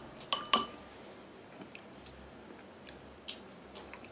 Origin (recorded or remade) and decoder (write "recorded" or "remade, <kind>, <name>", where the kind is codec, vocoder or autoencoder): recorded